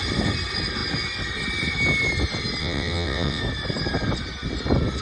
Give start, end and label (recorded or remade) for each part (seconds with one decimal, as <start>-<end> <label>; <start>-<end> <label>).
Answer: 0.0-2.6 recorded; 2.6-3.4 remade; 3.4-5.0 recorded